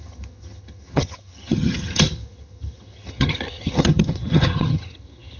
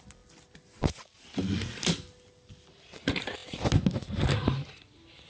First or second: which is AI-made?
first